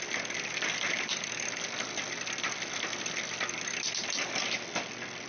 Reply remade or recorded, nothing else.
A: recorded